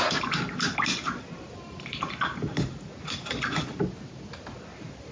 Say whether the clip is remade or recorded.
recorded